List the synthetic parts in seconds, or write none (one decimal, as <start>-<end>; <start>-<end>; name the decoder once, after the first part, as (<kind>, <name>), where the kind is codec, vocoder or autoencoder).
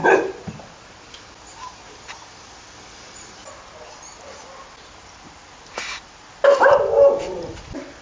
none